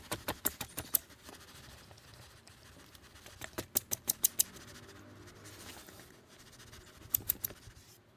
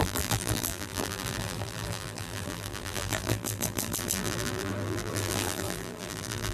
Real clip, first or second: first